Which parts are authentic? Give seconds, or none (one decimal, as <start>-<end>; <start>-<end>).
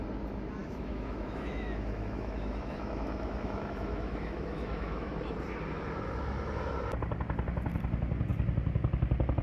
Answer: 0.0-0.6; 5.1-9.4